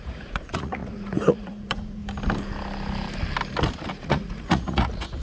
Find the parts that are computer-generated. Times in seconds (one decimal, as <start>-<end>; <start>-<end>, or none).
0.0-2.0; 3.9-5.2